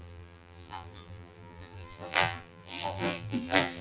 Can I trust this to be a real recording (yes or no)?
no